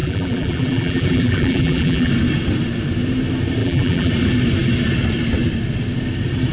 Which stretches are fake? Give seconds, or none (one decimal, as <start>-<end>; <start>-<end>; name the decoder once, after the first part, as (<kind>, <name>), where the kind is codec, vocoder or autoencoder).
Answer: 0.0-2.1 (vocoder, BigVGAN v2); 3.6-4.1